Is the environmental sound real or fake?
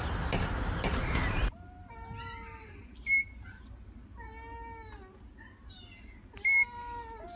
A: real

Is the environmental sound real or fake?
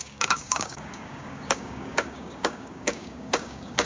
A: fake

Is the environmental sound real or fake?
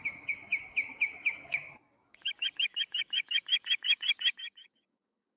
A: fake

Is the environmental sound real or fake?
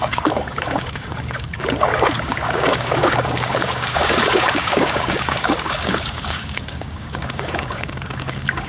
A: fake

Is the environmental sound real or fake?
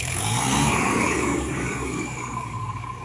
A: fake